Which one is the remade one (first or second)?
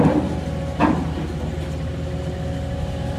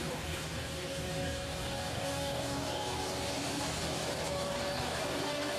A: second